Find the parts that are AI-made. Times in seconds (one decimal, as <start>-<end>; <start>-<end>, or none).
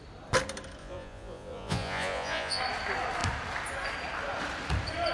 0.8-2.6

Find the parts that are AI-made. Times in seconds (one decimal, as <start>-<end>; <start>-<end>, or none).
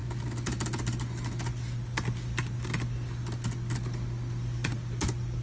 none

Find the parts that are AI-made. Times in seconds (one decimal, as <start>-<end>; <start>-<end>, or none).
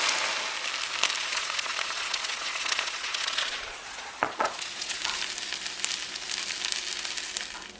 1.2-5.0